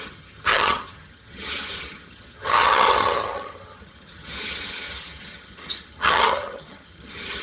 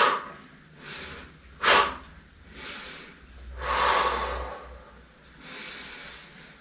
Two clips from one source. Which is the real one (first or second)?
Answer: second